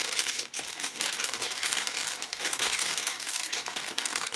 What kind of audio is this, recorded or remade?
remade